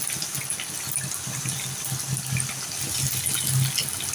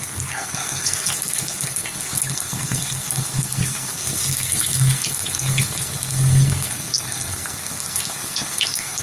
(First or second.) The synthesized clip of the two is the second